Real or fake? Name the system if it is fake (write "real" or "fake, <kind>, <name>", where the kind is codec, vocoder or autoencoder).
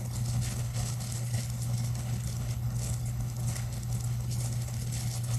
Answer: fake, codec, HILCodec